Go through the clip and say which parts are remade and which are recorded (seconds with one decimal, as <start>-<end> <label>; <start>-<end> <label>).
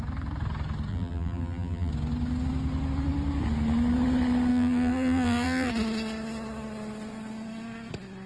0.0-0.9 recorded; 0.9-1.9 remade; 1.9-4.5 recorded; 4.5-5.7 remade; 5.7-8.3 recorded